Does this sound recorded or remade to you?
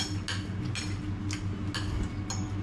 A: recorded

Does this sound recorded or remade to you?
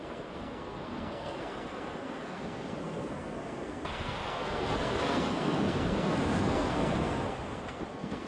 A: remade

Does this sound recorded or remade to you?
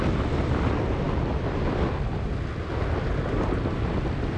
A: recorded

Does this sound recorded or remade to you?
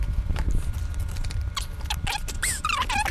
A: recorded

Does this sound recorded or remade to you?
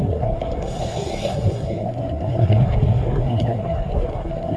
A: remade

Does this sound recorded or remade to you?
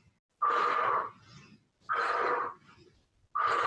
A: recorded